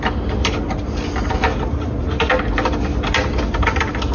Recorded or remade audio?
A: recorded